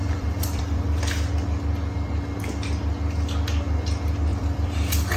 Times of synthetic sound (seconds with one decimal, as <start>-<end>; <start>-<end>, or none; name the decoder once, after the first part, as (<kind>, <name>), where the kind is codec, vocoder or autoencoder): 0.0-1.0 (vocoder, BigVGAN v2); 4.3-5.2